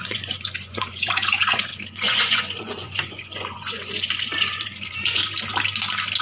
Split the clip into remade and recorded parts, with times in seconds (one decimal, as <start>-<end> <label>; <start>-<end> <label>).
0.0-5.2 remade; 5.2-6.2 recorded